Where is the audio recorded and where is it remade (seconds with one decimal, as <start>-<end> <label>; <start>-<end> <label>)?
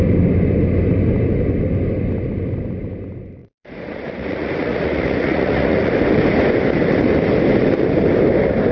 0.0-3.4 recorded; 3.4-5.9 remade; 5.9-8.7 recorded